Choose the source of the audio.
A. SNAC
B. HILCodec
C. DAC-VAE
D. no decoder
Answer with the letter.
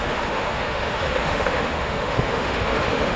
C